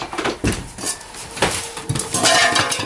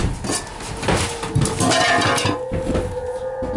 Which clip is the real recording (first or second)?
second